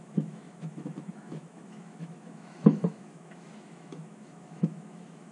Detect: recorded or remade remade